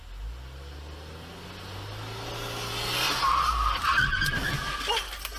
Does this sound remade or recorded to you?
recorded